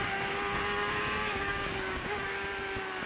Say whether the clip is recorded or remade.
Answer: remade